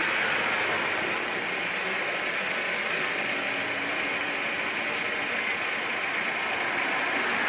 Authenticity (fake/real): real